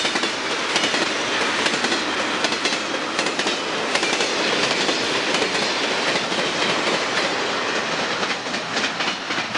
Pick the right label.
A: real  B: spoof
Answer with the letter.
A